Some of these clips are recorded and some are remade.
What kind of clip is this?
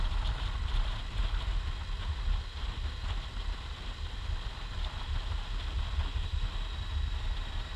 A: recorded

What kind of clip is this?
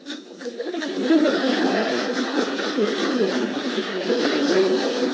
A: remade